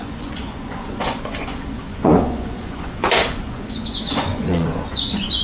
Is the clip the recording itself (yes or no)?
no